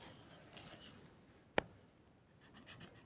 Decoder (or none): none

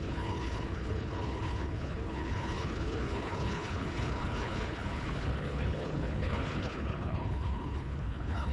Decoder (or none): codec, HILCodec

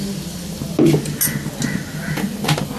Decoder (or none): none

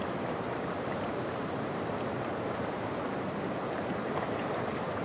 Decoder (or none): vocoder, BigVGAN v2